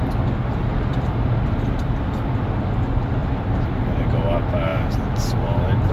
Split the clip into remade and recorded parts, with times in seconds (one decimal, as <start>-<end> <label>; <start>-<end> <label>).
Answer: 0.0-3.2 recorded; 3.2-3.8 remade; 3.8-5.9 recorded